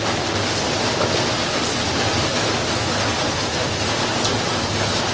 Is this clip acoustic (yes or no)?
yes